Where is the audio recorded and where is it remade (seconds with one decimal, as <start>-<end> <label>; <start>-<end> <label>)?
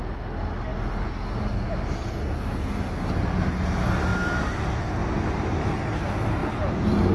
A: 0.0-4.1 recorded; 4.1-4.8 remade; 4.8-6.4 recorded; 6.4-7.1 remade